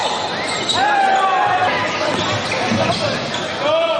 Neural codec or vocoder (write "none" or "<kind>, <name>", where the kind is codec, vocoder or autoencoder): none